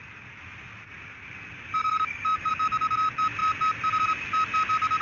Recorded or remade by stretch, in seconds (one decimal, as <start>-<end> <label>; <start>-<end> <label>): 0.0-1.8 recorded; 1.8-2.5 remade; 2.5-5.0 recorded